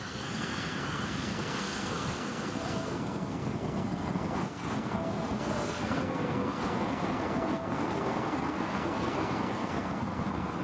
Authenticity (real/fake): fake